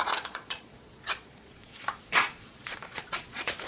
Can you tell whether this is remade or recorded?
remade